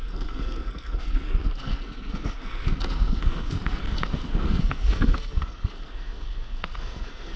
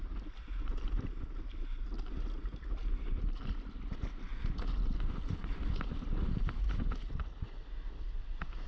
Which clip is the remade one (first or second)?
first